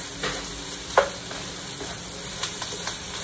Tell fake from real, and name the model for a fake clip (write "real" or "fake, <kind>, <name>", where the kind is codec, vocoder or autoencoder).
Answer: real